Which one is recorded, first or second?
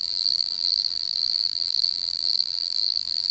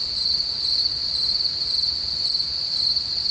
second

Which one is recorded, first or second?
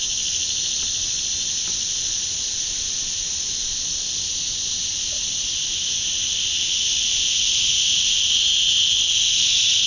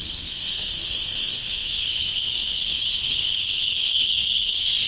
first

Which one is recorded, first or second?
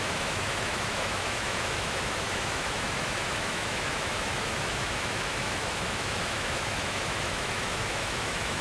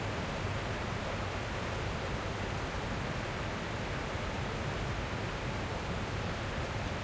second